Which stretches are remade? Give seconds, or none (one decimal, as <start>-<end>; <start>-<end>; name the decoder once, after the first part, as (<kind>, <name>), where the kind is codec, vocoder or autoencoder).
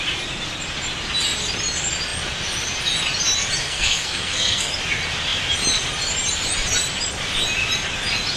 3.6-4.7 (codec, SNAC)